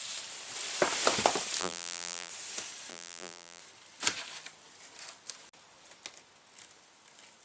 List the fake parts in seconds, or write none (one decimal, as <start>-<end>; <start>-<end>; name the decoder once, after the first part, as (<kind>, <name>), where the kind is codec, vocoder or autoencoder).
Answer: 1.6-2.3 (vocoder, BigVGAN v2); 2.9-3.6